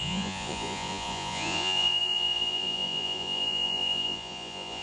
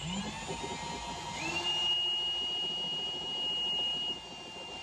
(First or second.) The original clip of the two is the second